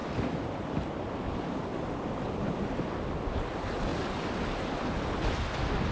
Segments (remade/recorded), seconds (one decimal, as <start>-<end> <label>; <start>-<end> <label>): 0.0-5.9 recorded